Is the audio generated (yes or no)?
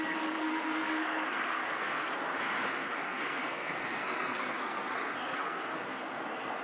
yes